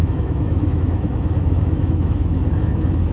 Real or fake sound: fake